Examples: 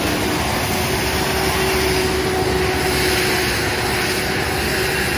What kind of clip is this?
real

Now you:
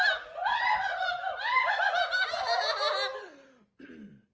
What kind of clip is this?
real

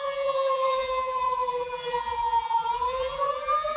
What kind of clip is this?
fake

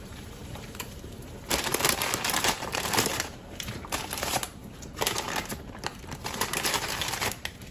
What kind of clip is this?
fake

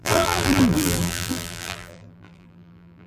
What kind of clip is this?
fake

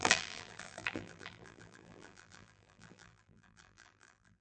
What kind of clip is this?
fake